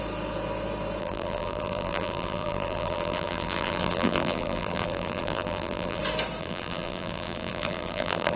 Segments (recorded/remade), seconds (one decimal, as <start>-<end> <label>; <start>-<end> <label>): 0.0-1.0 recorded; 1.0-6.0 remade; 6.0-6.4 recorded; 6.4-8.4 remade